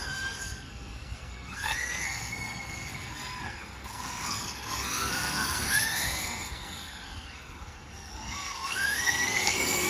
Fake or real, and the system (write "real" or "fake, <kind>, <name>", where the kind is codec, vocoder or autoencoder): fake, codec, SNAC